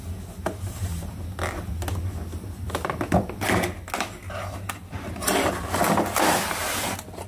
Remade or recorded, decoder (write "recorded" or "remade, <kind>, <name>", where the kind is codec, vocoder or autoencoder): recorded